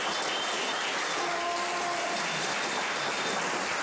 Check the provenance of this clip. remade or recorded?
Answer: recorded